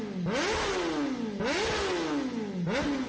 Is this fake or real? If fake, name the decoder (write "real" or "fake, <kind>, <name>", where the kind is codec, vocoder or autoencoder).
real